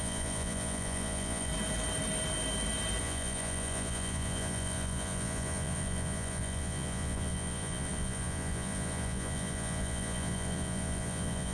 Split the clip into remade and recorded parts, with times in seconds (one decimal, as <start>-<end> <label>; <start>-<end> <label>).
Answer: 0.0-1.5 remade; 1.5-3.0 recorded; 3.0-11.5 remade